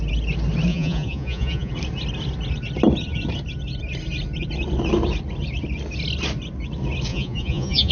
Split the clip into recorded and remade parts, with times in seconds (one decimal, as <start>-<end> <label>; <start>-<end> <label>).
0.0-0.7 recorded; 0.7-1.7 remade; 1.7-7.1 recorded; 7.1-7.9 remade